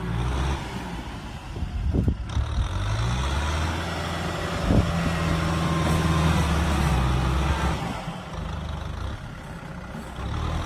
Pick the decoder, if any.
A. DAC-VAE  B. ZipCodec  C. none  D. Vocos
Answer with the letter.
C